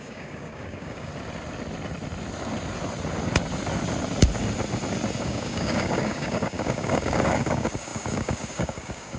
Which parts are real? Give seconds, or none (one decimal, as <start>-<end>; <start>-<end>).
1.1-5.2